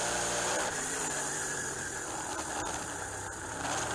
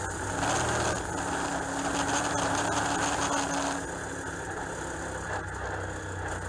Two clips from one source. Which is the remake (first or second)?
first